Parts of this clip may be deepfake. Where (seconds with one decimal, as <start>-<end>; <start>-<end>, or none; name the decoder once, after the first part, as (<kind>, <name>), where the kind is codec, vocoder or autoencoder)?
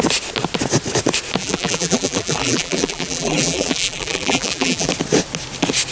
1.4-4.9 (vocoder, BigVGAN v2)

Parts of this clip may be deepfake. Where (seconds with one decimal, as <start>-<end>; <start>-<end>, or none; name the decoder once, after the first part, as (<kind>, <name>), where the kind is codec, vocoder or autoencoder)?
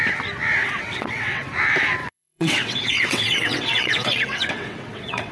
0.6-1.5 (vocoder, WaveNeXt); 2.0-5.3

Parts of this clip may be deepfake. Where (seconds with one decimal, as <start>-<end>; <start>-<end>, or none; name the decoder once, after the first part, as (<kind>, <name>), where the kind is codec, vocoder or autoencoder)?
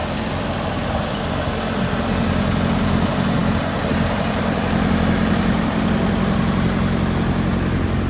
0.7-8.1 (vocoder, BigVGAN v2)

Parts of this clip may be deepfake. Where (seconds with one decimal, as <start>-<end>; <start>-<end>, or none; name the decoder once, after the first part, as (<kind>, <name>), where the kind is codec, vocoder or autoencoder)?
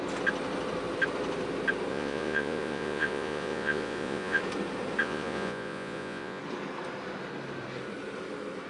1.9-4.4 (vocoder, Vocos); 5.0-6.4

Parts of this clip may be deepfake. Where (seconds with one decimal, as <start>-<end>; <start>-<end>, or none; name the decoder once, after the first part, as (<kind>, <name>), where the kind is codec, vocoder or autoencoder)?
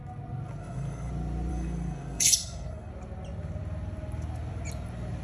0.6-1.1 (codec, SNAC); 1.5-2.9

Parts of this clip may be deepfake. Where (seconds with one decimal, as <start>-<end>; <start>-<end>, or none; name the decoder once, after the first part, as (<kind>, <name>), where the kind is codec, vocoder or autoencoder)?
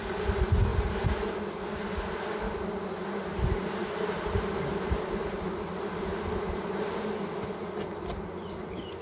0.7-1.3 (vocoder, BigVGAN v2); 3.3-7.6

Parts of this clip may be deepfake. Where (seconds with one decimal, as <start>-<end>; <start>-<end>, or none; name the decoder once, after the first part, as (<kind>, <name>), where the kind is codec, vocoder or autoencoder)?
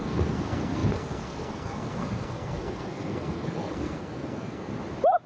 0.0-4.7 (codec, SNAC)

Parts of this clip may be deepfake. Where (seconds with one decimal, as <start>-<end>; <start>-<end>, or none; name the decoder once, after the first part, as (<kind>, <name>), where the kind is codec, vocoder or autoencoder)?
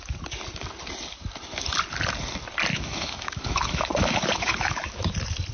2.7-5.1 (autoencoder, DAC-VAE)